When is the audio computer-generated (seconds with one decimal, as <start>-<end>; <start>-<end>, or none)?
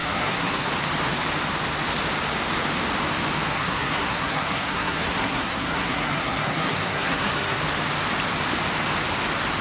0.0-0.7; 3.5-7.6